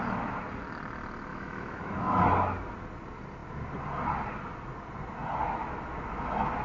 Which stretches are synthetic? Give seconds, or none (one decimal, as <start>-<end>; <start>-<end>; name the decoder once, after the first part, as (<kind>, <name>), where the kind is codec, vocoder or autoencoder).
1.3-2.2 (autoencoder, DAC-VAE)